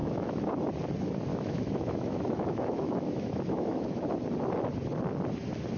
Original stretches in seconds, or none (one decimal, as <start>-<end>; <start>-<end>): 0.5-1.3; 4.0-5.8